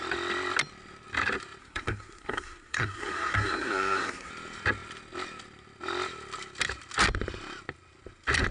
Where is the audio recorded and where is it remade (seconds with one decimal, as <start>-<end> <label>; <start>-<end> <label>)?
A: 0.0-1.6 recorded; 1.6-4.3 remade; 4.3-8.5 recorded